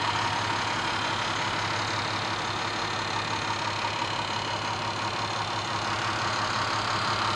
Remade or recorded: recorded